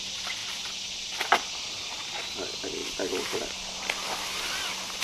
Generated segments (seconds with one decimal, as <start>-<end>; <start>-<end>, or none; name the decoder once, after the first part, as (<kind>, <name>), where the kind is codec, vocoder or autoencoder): none